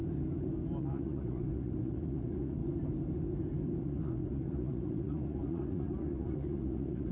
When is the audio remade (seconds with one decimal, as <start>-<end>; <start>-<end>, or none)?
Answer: 0.8-2.6; 3.8-7.1